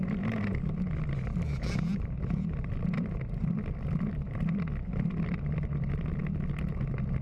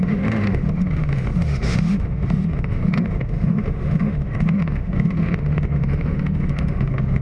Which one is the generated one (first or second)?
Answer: second